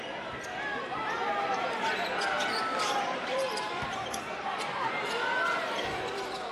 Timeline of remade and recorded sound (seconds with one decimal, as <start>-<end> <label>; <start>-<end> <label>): 0.0-2.7 recorded; 2.7-5.1 remade; 5.1-6.5 recorded